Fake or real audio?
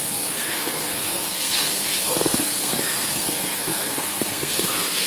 fake